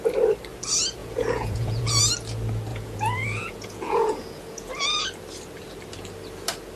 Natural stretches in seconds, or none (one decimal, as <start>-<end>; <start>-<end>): 0.0-1.0; 2.0-2.7; 4.7-6.8